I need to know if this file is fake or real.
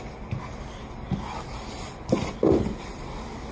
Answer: real